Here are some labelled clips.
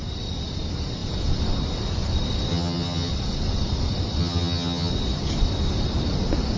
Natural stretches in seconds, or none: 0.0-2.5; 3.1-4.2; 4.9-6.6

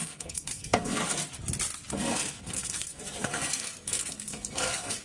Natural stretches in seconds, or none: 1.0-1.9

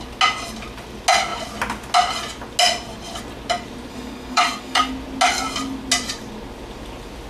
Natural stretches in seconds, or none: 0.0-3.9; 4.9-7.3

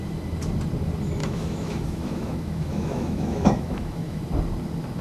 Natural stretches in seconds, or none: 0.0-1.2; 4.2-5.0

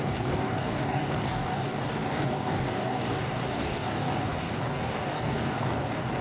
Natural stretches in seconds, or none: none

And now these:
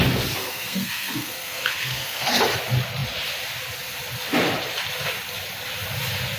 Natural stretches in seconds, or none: 0.0-0.4; 2.4-6.4

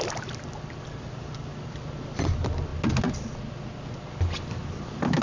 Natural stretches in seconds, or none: 0.0-5.2

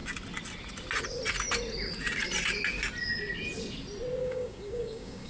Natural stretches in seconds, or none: 0.0-4.2